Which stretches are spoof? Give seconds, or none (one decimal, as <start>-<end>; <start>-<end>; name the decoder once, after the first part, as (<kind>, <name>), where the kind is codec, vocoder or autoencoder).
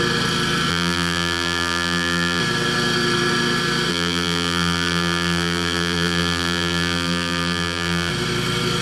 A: 0.7-2.4 (vocoder, BigVGAN v2); 3.9-8.1